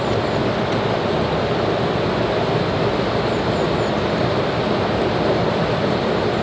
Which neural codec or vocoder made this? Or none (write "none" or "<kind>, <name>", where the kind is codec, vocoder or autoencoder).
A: none